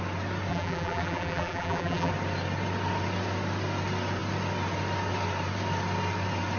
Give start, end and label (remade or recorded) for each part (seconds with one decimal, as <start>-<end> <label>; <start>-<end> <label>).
0.0-0.5 recorded; 0.5-2.1 remade; 2.1-6.6 recorded